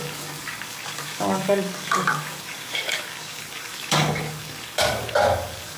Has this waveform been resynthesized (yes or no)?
yes